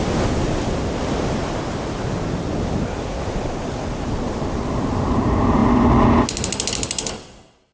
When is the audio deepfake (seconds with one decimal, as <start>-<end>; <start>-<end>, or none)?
none